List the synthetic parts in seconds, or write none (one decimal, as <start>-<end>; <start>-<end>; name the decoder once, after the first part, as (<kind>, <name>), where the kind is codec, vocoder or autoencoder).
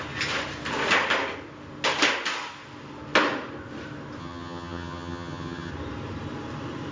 4.2-5.7 (vocoder, HiFi-GAN)